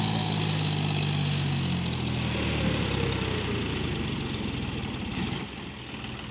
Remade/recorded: recorded